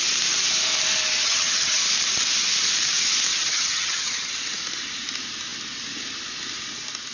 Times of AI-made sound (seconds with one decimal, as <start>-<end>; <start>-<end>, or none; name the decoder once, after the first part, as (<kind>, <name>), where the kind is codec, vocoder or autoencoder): 1.2-1.8 (vocoder, HiFi-GAN); 3.3-4.3